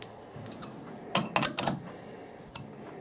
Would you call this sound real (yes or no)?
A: yes